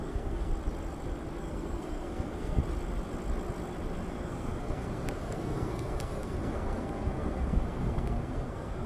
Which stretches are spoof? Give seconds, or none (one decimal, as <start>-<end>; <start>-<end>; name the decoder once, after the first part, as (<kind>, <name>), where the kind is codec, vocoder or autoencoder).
0.0-0.5 (codec, SNAC); 1.4-2.6; 4.1-8.9